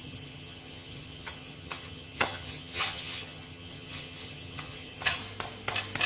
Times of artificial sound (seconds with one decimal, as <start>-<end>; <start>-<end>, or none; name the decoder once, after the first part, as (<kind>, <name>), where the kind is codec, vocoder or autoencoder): 0.0-5.2 (vocoder, HiFi-GAN)